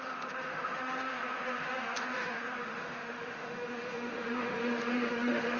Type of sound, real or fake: fake